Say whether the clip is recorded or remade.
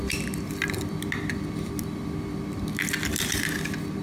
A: recorded